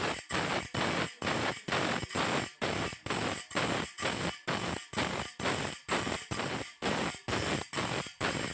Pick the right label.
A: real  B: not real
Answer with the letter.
A